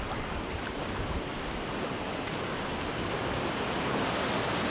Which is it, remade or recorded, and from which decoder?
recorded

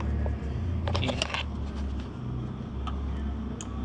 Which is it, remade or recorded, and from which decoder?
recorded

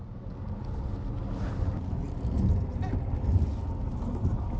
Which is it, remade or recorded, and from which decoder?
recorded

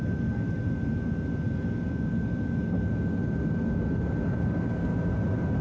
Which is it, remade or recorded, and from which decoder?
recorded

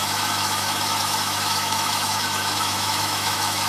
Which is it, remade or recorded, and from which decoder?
remade, autoencoder, DAC-VAE